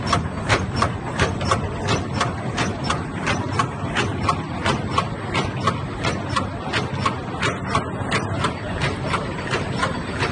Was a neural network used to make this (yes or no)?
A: no